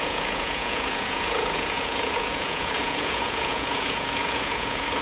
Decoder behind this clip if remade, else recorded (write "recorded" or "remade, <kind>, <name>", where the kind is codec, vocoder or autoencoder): remade, vocoder, Vocos